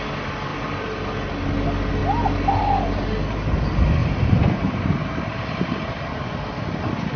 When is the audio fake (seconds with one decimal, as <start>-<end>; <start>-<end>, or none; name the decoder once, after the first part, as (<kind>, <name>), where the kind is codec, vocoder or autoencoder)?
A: 0.5-1.0 (vocoder, BigVGAN v2); 4.0-4.8; 5.3-6.5